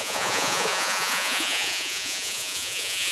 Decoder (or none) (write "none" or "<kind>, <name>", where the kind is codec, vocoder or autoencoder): vocoder, Vocos